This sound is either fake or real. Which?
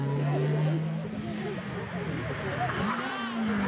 real